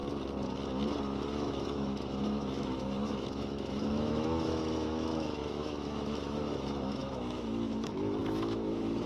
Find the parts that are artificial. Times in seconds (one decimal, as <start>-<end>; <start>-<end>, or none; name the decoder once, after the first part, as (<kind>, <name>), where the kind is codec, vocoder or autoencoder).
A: 1.3-9.1 (autoencoder, DAC-VAE)